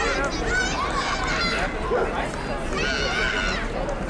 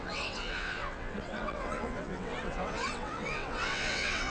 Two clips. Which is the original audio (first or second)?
first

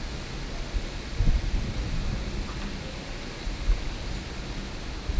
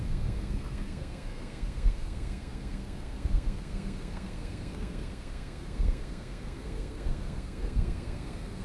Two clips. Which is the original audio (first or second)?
first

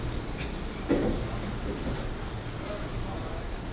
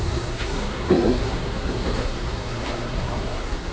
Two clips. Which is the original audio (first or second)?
first